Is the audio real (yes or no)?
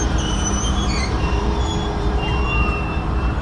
no